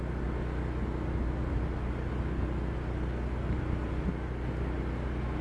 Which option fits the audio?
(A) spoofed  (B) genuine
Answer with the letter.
B